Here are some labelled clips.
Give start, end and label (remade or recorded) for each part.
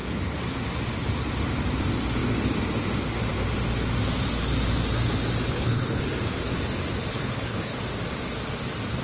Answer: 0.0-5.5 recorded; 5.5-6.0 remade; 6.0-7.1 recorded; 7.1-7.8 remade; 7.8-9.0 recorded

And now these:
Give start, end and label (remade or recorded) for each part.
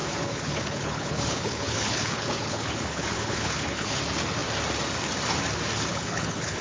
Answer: 0.0-4.0 remade; 4.0-5.9 recorded; 5.9-6.6 remade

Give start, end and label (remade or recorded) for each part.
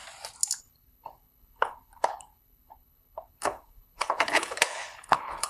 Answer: 0.0-0.6 recorded; 0.6-5.5 remade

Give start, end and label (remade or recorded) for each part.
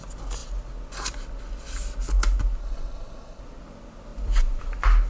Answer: 0.0-2.6 recorded; 2.6-3.4 remade; 3.4-5.1 recorded